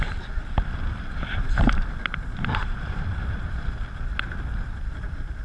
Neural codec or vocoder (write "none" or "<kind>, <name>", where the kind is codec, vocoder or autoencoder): none